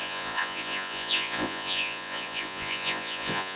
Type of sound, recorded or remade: remade